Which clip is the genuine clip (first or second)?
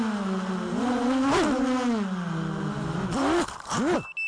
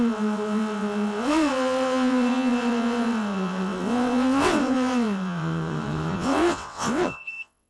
first